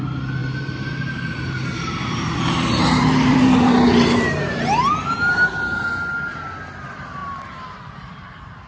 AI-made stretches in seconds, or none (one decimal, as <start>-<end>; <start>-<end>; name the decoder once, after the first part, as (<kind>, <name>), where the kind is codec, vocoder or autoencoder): 0.4-4.9 (vocoder, BigVGAN v2)